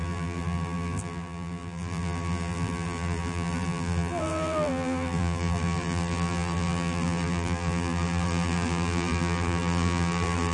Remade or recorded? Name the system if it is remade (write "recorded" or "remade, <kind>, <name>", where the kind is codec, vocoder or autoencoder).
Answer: remade, vocoder, BigVGAN v2